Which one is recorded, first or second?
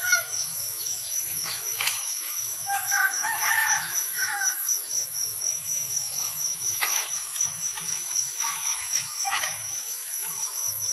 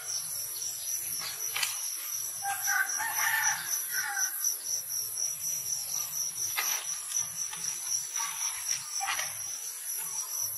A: second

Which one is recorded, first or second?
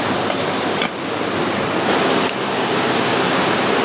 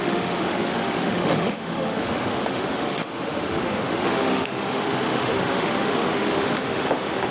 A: first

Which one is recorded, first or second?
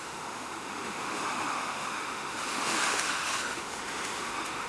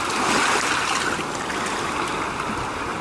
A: second